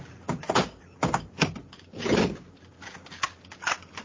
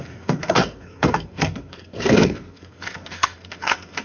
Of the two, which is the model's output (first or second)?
second